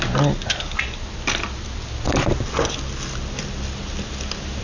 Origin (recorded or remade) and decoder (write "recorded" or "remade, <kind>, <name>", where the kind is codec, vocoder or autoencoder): recorded